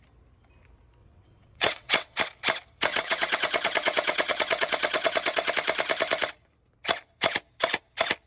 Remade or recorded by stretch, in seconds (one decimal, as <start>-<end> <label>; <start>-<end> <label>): 0.0-1.0 recorded; 1.0-2.2 remade; 2.2-2.9 recorded; 2.9-5.5 remade; 5.5-8.3 recorded